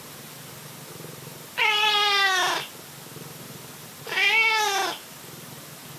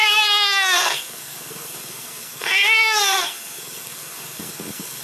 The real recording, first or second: first